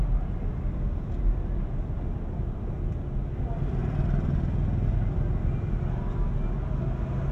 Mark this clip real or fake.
real